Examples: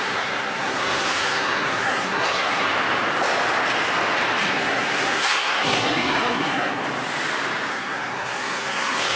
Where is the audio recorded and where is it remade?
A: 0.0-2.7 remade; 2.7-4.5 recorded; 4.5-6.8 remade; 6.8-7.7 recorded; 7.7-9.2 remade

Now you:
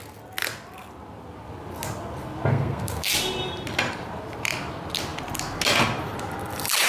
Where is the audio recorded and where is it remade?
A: 0.0-2.5 recorded; 2.5-3.1 remade; 3.1-6.9 recorded

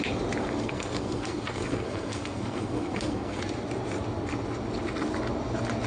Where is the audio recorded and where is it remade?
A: 0.0-0.4 recorded; 0.4-3.4 remade; 3.4-5.9 recorded